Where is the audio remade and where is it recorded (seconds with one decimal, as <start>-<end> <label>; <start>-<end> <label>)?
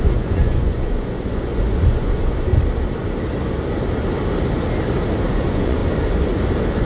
0.0-2.5 remade; 2.5-5.3 recorded; 5.3-5.8 remade; 5.8-6.8 recorded